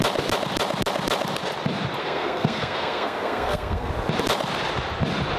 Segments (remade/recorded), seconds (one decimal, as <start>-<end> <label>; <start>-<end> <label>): 0.0-2.0 recorded; 2.0-3.9 remade; 3.9-5.4 recorded